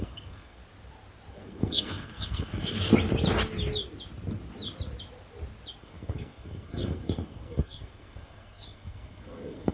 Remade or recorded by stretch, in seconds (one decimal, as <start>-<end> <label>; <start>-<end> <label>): 0.0-0.6 remade; 0.6-1.3 recorded; 1.3-2.9 remade; 2.9-5.8 recorded; 5.8-9.7 remade

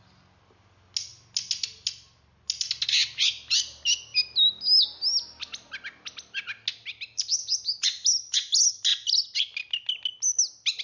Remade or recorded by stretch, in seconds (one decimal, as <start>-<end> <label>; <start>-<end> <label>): 0.0-10.8 recorded

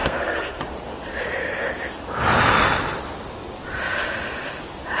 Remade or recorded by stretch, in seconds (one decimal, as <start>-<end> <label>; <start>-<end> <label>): 0.0-0.6 remade; 0.6-5.0 recorded

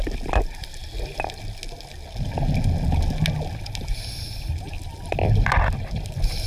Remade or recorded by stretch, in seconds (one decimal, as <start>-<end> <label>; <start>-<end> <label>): 0.0-6.5 recorded

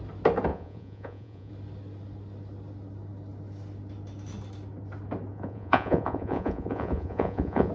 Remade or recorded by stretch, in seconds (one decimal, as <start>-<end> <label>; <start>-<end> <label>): 0.0-0.5 recorded; 0.5-1.5 remade; 1.5-5.3 recorded; 5.3-7.7 remade

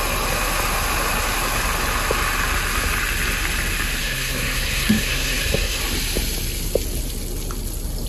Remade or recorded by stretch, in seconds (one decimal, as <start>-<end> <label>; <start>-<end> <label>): 0.0-4.0 recorded; 4.0-5.8 remade; 5.8-8.1 recorded